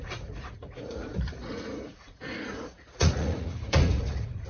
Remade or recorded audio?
remade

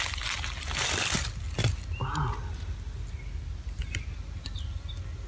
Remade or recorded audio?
recorded